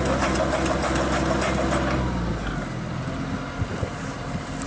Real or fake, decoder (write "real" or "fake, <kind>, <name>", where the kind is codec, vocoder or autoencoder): real